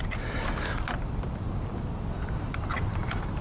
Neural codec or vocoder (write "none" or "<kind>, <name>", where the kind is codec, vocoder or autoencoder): none